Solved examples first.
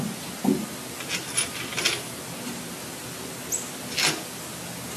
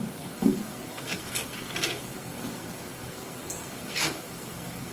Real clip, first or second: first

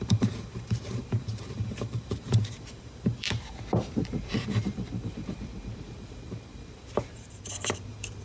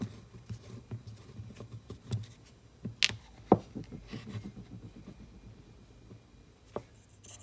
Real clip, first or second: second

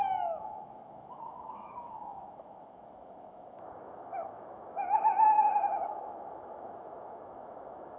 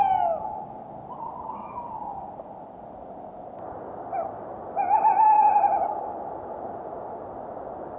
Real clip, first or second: second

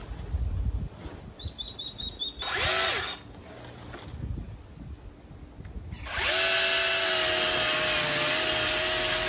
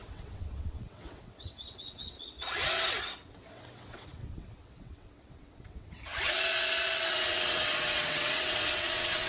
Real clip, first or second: first